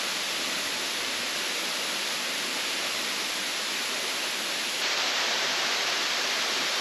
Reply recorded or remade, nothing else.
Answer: recorded